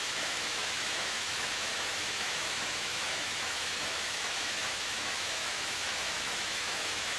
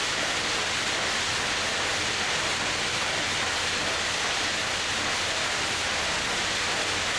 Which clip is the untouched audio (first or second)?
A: second